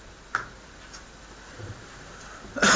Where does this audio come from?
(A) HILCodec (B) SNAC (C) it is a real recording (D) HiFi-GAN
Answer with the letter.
C